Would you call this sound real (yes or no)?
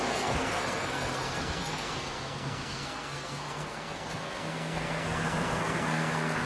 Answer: no